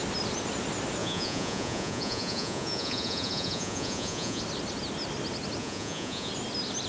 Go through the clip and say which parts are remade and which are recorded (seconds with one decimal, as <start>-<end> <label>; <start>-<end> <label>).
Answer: 0.0-1.0 recorded; 1.0-4.4 remade; 4.4-5.6 recorded; 5.6-6.3 remade; 6.3-6.9 recorded